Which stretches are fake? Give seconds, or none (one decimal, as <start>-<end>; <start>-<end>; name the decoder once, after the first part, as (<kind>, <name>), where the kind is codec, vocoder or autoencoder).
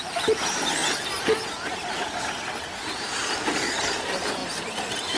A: none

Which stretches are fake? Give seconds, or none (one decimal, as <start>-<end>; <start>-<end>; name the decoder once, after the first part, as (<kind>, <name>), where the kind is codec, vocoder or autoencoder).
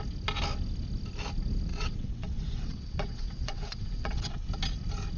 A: 1.7-4.3 (vocoder, WaveNeXt)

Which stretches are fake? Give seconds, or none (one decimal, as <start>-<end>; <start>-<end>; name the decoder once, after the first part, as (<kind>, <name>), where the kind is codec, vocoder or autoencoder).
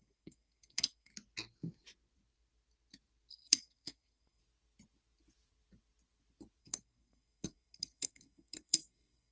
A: 0.0-1.1 (codec, SNAC); 3.3-4.4; 6.6-9.3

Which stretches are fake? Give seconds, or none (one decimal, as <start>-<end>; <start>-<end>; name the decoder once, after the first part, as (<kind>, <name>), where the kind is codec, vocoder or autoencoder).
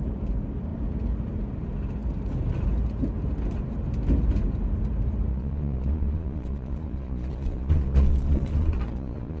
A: 5.3-9.4 (vocoder, Vocos)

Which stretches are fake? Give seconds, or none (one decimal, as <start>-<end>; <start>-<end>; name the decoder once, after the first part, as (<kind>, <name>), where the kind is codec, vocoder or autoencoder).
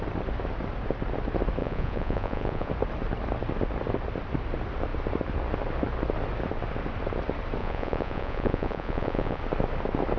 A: 1.6-2.7 (vocoder, Vocos); 7.6-9.4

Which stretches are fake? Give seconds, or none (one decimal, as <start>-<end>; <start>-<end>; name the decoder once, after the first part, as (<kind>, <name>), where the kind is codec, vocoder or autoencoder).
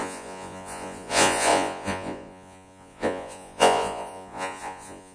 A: 0.0-5.1 (vocoder, Vocos)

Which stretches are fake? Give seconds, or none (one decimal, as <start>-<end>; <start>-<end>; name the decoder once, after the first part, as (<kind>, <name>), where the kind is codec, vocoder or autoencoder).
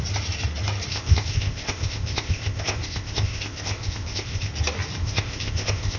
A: 0.9-4.5 (codec, ZipCodec); 5.0-6.0